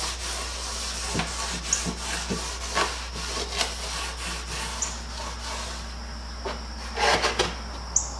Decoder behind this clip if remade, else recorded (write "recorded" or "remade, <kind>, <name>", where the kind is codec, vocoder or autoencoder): recorded